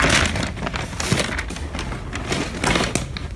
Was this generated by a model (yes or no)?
no